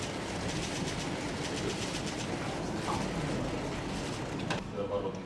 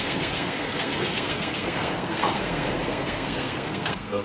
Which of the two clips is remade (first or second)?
second